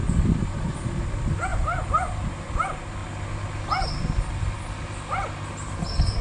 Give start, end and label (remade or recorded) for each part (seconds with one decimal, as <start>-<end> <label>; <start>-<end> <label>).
0.0-1.0 remade; 1.0-1.5 recorded; 1.5-2.4 remade; 2.4-6.2 recorded